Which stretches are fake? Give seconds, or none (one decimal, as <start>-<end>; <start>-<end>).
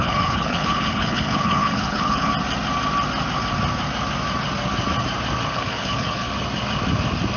0.0-2.3; 5.5-6.3